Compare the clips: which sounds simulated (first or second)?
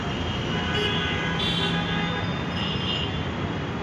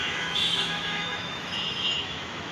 second